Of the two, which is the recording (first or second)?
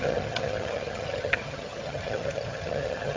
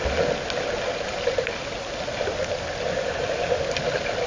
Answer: second